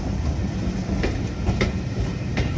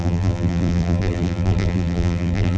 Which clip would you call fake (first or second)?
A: second